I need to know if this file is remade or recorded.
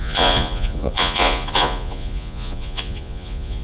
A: remade